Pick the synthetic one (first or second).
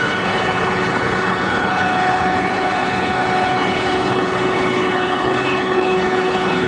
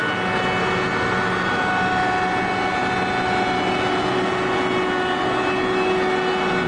first